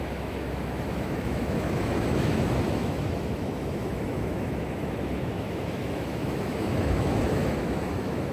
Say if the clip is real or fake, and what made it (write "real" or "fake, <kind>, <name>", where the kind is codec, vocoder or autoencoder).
fake, autoencoder, DAC-VAE